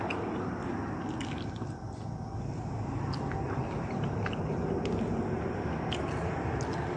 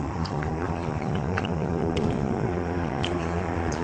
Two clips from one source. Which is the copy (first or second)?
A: second